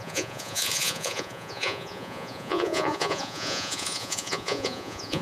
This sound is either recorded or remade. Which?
remade